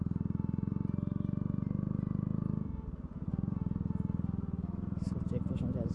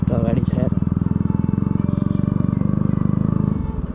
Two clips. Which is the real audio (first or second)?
first